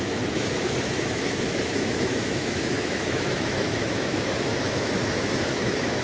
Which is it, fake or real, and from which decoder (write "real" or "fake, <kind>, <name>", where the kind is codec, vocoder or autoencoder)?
fake, autoencoder, DAC-VAE